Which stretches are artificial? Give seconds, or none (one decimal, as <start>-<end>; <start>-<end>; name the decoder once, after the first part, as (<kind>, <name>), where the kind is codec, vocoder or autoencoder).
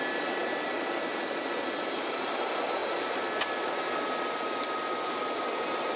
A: none